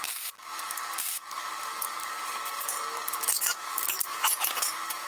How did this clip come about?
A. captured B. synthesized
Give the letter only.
B